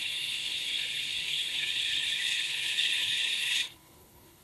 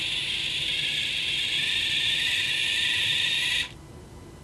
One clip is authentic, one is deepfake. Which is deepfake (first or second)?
first